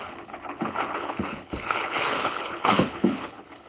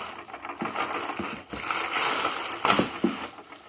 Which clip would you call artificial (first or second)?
first